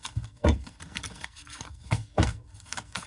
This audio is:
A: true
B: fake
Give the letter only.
B